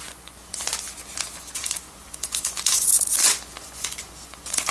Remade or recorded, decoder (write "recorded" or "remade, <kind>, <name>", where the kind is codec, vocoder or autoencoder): remade, vocoder, Vocos